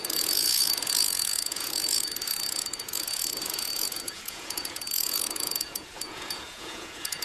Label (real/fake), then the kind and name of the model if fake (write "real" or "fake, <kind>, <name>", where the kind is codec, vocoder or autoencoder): fake, vocoder, Vocos